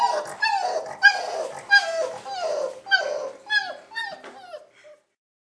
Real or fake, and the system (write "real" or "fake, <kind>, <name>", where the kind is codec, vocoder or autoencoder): real